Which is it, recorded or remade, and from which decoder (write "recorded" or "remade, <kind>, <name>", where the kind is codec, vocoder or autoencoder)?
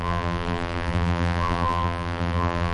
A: remade, vocoder, BigVGAN v2